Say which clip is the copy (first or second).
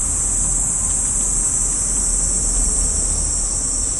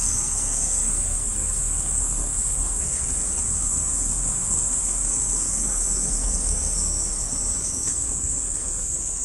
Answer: second